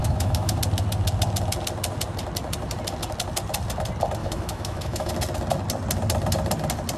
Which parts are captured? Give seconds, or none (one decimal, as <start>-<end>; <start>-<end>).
0.6-4.2; 5.1-7.0